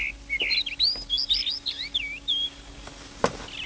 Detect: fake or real real